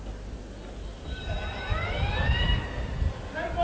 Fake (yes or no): no